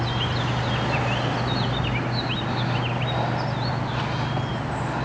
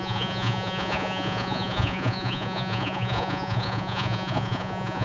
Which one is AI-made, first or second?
second